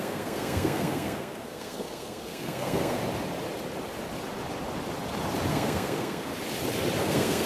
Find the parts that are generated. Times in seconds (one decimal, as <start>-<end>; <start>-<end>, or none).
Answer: 0.0-3.0; 5.5-6.3; 7.0-7.5